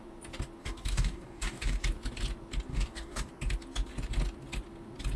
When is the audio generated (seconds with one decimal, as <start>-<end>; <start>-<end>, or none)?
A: 0.6-1.8; 2.7-3.3